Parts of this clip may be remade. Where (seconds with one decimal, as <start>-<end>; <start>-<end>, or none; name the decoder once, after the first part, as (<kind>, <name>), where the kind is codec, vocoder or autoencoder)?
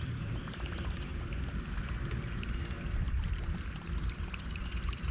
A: 0.0-5.1 (vocoder, BigVGAN v2)